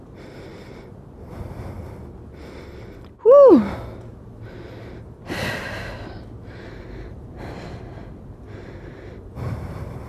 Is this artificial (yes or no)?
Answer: no